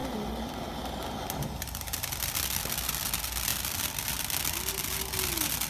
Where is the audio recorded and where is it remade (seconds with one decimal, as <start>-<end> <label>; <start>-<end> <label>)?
0.0-5.7 recorded